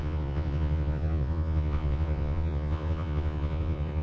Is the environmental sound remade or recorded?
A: remade